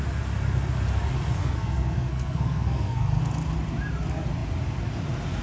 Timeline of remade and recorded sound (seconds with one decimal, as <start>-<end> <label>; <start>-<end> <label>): 0.0-1.4 recorded; 1.4-3.2 remade; 3.2-5.4 recorded